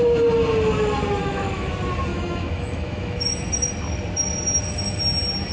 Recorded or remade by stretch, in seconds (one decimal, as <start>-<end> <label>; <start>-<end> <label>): 0.0-1.2 recorded; 1.2-1.7 remade; 1.7-2.1 recorded; 2.1-3.3 remade; 3.3-5.5 recorded